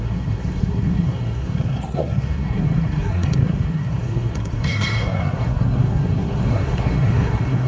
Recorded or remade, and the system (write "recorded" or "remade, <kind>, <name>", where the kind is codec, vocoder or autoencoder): remade, codec, SNAC